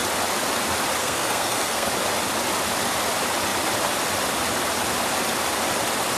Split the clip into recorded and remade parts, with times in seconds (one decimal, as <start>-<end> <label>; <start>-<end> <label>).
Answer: 0.0-1.0 recorded; 1.0-1.9 remade; 1.9-6.2 recorded